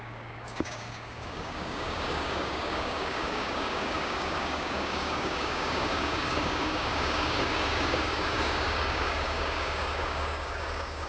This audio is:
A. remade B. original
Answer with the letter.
A